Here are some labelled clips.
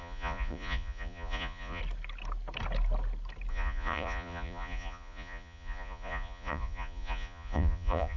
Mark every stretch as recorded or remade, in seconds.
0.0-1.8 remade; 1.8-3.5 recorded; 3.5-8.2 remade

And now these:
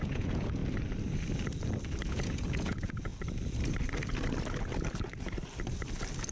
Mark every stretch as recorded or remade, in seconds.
0.0-0.6 remade; 0.6-2.1 recorded; 2.1-3.1 remade; 3.1-6.3 recorded

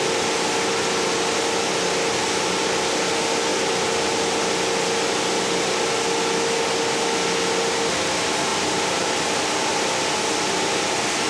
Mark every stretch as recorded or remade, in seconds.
0.0-11.3 recorded

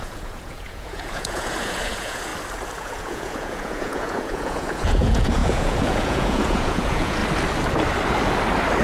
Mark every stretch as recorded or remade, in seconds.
0.0-2.3 remade; 2.3-2.8 recorded; 2.8-7.2 remade; 7.2-8.8 recorded